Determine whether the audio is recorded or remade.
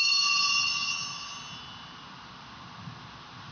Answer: recorded